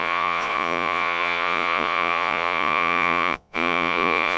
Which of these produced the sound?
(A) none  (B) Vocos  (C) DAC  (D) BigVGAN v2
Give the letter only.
B